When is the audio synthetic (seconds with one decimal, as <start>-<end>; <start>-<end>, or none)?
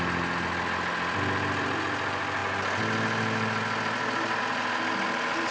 none